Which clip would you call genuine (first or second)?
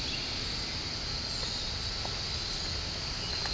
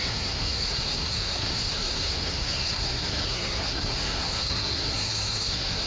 first